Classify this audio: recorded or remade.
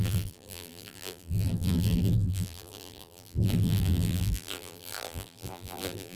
remade